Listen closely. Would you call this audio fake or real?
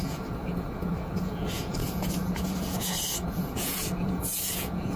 fake